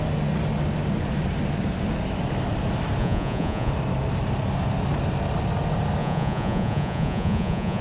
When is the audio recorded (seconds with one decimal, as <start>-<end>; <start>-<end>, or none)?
0.0-3.0; 3.7-6.0